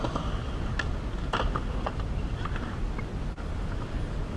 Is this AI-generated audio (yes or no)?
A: no